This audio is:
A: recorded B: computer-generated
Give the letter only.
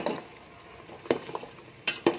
B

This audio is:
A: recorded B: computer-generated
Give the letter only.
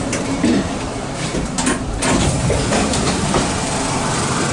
B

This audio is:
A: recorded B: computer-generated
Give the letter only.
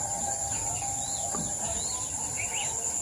A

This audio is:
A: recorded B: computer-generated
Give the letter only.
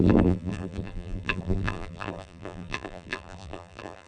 B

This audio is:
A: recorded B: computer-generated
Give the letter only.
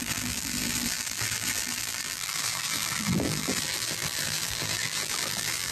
B